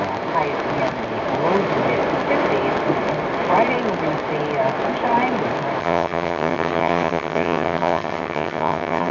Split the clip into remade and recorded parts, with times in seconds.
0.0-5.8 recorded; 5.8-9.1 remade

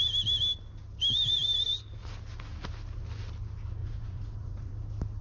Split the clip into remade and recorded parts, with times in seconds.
0.0-3.8 recorded; 3.8-4.7 remade; 4.7-5.2 recorded

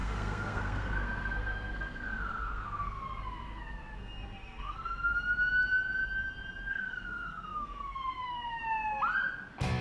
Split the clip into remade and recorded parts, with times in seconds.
0.0-5.1 remade; 5.1-6.7 recorded; 6.7-8.6 remade; 8.6-9.8 recorded